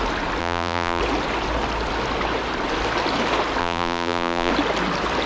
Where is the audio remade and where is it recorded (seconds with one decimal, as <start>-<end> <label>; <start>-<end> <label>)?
0.0-0.4 recorded; 0.4-1.0 remade; 1.0-3.6 recorded; 3.6-4.5 remade; 4.5-5.3 recorded